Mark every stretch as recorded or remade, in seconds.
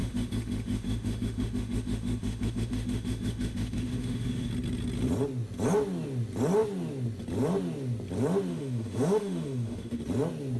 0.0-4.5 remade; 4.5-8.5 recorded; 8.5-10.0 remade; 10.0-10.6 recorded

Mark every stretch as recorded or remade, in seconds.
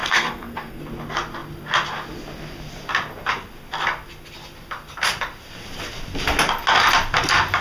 0.0-0.8 remade; 0.8-7.6 recorded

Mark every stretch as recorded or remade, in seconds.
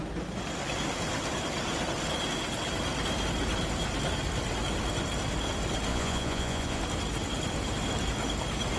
0.0-5.9 recorded; 5.9-6.8 remade; 6.8-8.8 recorded